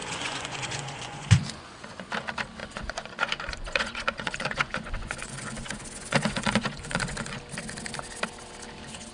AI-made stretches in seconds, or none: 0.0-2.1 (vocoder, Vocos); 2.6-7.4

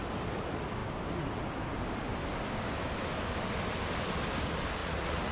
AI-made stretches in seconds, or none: 4.8-5.3 (vocoder, Vocos)